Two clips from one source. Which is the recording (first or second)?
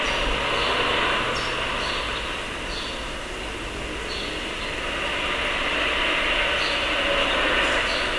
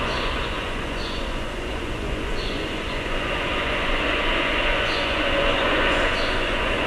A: first